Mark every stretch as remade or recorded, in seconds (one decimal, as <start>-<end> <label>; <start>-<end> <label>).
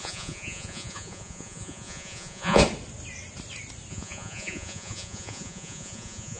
0.0-2.6 remade; 2.6-3.9 recorded; 3.9-6.4 remade